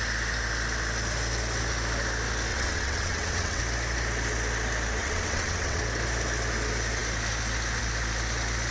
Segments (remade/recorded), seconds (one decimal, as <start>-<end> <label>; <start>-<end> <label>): 0.0-2.5 recorded; 2.5-3.6 remade; 3.6-5.0 recorded; 5.0-5.8 remade; 5.8-8.7 recorded